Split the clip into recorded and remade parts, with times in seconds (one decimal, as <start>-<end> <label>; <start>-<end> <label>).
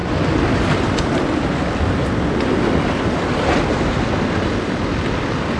0.0-5.6 recorded